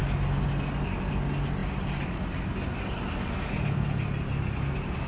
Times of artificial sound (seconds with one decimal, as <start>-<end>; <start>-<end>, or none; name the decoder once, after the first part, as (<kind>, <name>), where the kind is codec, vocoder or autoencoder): none